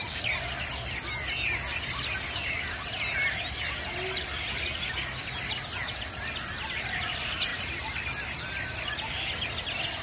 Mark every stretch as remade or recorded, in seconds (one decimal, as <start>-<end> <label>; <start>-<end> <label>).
0.0-10.0 recorded